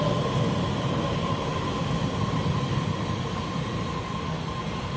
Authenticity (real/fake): real